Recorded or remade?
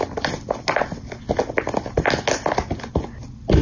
recorded